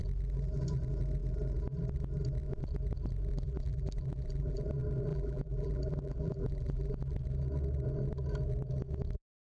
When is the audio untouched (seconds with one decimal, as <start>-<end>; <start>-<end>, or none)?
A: 0.0-3.3; 4.6-5.1; 6.9-9.6